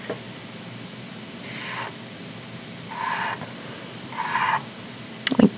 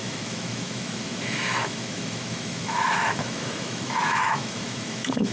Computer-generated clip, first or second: second